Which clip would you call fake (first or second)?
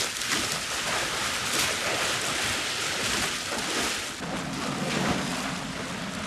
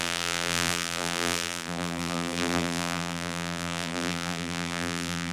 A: second